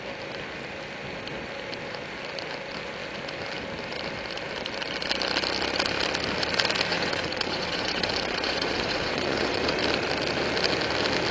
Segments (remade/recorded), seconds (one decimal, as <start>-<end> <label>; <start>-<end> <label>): 0.0-6.9 recorded; 6.9-9.8 remade; 9.8-11.3 recorded